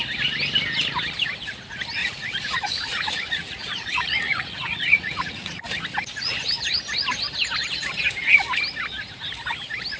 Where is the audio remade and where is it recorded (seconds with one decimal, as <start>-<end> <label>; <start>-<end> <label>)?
0.0-2.0 recorded; 2.0-5.6 remade; 5.6-10.0 recorded